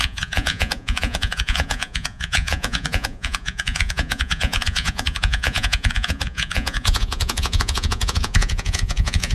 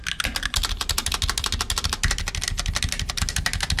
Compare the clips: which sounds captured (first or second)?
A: second